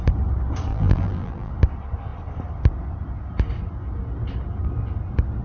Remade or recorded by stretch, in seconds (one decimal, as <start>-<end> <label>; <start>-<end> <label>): 0.0-0.7 recorded; 0.7-1.5 remade; 1.5-5.4 recorded